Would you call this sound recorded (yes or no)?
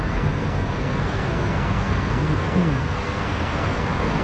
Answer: no